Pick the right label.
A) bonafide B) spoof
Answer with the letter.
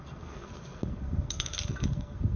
B